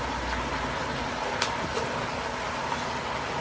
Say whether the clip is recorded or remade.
recorded